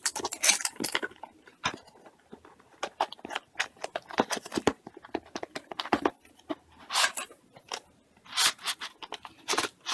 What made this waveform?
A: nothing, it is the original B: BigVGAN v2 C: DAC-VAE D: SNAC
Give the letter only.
A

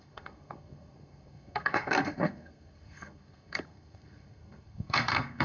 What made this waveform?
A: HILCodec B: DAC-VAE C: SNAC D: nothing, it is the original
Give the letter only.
C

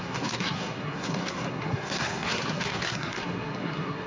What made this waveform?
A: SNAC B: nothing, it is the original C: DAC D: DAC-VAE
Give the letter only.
A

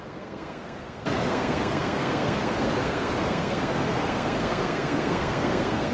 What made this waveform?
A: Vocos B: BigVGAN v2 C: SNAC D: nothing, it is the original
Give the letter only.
C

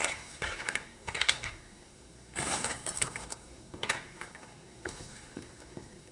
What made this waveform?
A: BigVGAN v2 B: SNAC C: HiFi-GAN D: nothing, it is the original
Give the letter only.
B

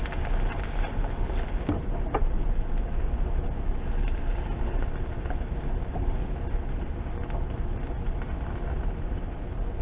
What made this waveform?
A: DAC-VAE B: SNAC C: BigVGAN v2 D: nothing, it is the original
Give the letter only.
D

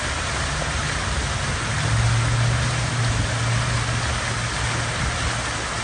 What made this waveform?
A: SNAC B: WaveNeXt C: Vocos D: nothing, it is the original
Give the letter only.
D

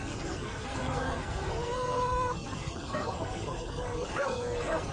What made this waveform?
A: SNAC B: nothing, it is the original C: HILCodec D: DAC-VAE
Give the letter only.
A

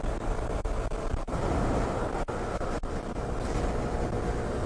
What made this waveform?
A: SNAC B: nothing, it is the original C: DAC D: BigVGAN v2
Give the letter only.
B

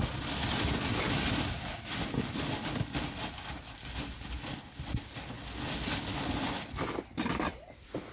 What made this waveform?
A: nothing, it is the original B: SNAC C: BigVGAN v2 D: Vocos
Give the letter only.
A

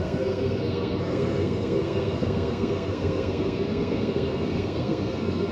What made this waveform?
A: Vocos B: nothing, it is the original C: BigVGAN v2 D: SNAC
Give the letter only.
D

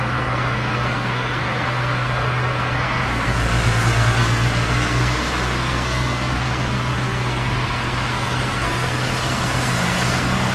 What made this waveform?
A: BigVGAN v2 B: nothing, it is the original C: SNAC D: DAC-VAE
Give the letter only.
C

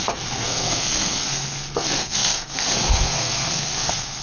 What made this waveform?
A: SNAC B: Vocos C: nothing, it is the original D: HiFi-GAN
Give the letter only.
A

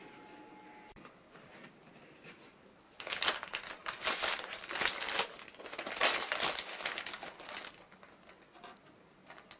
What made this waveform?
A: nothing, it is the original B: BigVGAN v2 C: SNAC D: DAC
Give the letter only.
A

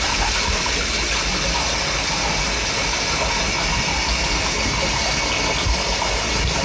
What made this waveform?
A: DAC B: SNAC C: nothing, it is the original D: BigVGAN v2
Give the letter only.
C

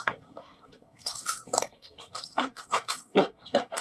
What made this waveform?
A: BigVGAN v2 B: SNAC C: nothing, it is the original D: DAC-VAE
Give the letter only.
B